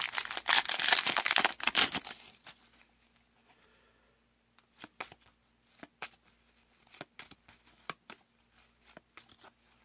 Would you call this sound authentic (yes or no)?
yes